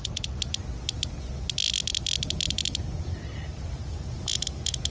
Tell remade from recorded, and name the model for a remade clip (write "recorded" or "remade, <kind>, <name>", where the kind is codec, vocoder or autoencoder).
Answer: recorded